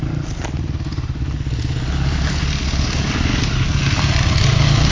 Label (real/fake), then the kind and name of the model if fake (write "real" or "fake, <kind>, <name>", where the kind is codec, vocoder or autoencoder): real